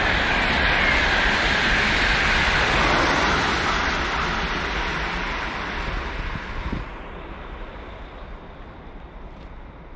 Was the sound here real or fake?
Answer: real